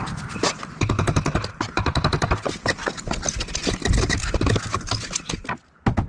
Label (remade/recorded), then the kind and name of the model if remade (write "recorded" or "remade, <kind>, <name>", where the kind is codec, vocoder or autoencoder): recorded